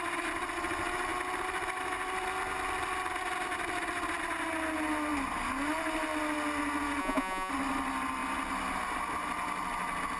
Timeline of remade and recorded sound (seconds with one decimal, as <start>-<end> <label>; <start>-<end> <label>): 0.0-7.0 recorded; 7.0-7.5 remade; 7.5-10.2 recorded